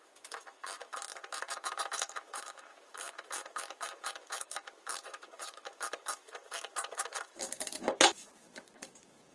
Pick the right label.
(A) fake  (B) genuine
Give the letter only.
A